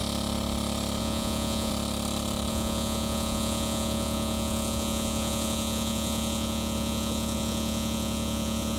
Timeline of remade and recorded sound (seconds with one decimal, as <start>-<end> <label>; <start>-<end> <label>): 0.0-1.0 recorded; 1.0-1.7 remade; 1.7-2.5 recorded; 2.5-8.8 remade